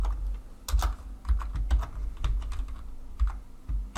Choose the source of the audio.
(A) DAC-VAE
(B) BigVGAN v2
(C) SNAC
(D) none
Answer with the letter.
D